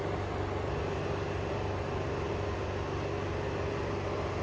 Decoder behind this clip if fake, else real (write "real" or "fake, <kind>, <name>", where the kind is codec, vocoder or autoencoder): real